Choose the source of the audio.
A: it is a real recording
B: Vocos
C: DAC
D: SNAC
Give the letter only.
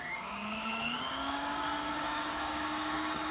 C